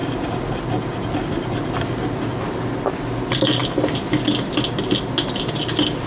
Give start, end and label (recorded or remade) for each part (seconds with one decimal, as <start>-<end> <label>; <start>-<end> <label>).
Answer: 0.0-6.1 recorded